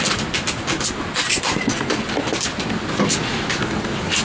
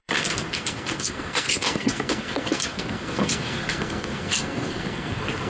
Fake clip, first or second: second